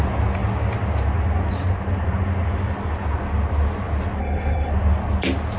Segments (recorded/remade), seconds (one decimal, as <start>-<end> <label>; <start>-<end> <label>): 0.0-4.2 recorded; 4.2-4.7 remade; 4.7-5.6 recorded